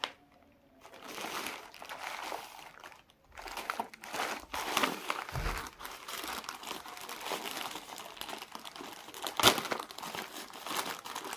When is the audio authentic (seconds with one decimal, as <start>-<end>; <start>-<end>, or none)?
0.0-11.4